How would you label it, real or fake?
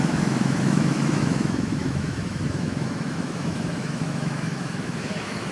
fake